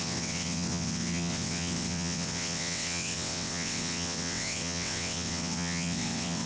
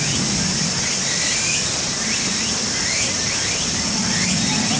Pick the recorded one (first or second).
second